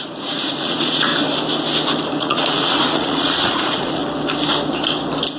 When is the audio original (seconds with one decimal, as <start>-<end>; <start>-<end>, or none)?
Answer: 1.1-2.2; 4.0-5.4